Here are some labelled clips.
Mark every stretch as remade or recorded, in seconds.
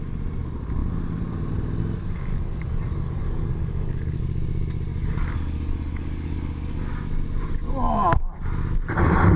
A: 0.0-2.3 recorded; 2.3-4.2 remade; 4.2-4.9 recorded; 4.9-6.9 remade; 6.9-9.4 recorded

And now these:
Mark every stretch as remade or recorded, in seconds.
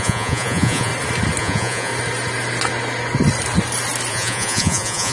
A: 0.0-0.9 remade; 0.9-1.4 recorded; 1.4-1.9 remade; 1.9-4.1 recorded; 4.1-5.1 remade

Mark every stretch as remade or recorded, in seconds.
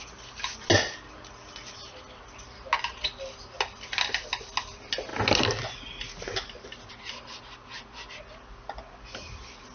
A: 0.0-9.7 recorded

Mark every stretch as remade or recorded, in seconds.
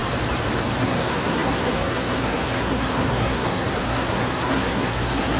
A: 0.0-0.8 recorded; 0.8-5.4 remade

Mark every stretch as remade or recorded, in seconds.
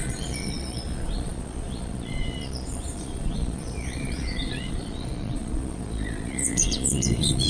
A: 0.0-7.5 remade